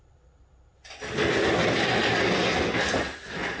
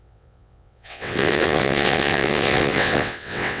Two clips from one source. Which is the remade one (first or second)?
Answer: second